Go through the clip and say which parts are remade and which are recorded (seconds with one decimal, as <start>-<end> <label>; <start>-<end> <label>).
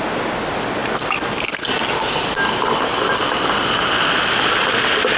0.0-5.2 recorded